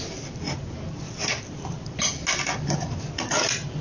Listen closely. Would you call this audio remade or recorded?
recorded